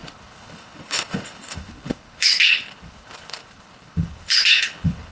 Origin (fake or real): fake